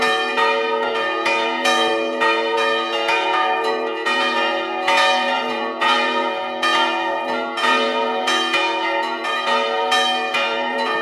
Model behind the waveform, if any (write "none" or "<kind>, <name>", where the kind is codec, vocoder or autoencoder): vocoder, Vocos